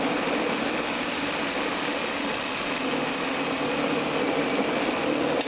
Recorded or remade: recorded